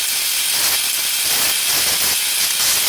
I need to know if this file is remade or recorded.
recorded